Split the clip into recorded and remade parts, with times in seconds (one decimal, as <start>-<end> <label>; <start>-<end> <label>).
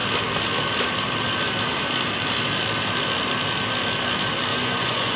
0.0-4.5 recorded; 4.5-5.2 remade